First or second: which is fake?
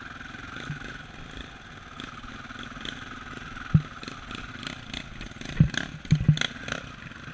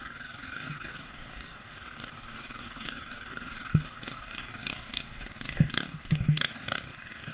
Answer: second